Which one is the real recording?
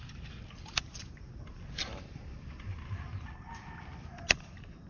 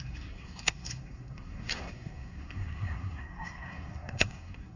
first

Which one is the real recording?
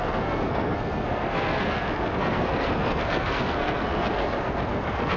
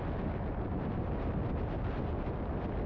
second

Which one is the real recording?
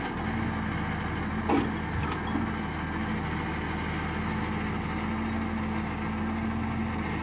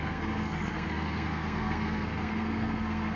first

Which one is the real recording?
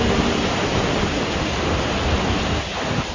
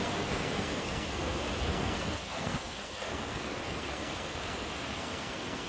first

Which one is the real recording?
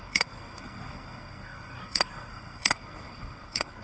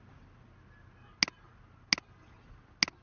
second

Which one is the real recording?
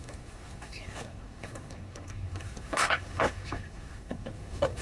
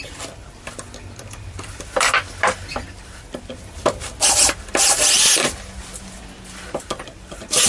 second